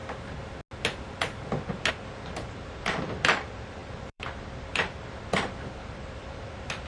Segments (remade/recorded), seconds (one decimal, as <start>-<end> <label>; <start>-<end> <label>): 0.0-1.9 recorded; 1.9-6.9 remade